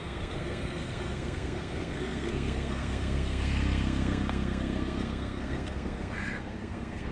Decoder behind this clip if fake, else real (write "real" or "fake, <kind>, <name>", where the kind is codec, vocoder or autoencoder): fake, codec, SNAC